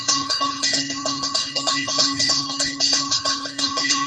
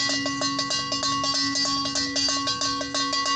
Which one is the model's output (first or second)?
first